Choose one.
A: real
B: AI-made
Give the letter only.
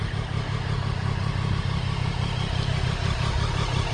A